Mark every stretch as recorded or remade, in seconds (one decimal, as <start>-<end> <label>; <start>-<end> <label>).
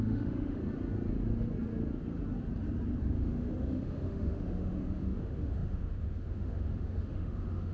0.0-0.6 remade; 0.6-3.0 recorded; 3.0-7.7 remade